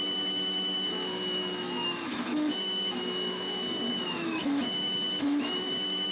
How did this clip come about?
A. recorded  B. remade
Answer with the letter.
B